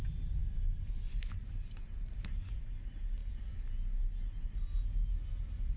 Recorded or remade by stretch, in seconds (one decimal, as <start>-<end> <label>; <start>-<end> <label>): 0.0-5.8 recorded